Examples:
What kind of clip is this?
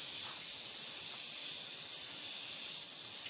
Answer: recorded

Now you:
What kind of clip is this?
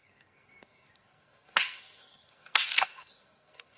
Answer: remade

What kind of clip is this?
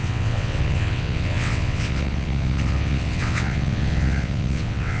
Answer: remade